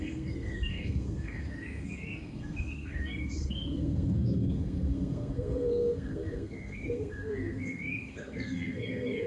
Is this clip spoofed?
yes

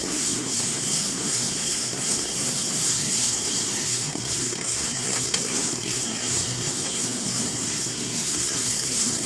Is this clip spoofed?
yes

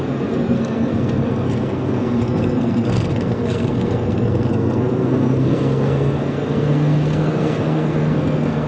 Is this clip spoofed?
yes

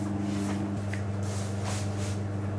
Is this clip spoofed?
no